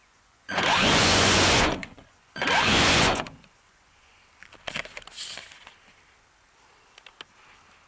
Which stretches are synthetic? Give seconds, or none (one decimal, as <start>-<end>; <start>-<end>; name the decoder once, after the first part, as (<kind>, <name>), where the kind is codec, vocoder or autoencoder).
0.0-4.2 (vocoder, Vocos)